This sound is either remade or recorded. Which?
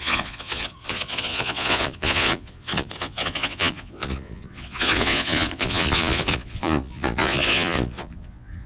remade